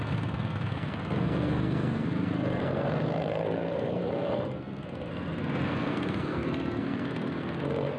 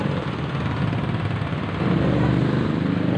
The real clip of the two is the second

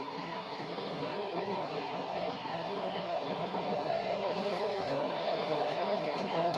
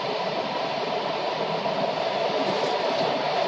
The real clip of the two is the second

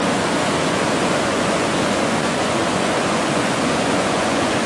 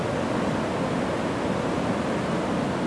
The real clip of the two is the second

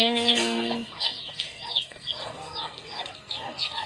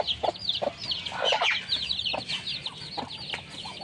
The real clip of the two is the second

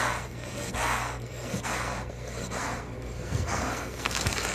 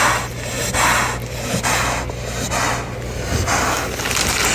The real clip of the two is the second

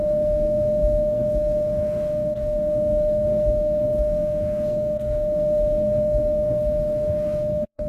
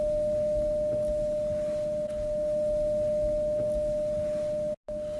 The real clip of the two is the second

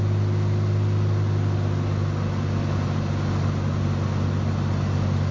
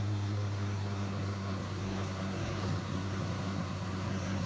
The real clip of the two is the first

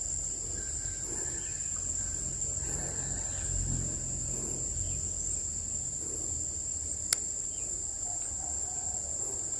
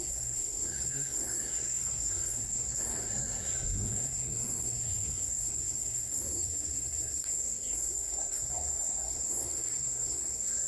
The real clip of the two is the first